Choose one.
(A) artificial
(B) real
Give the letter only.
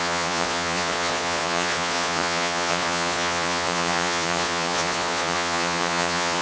A